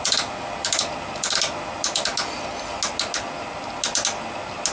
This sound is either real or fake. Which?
real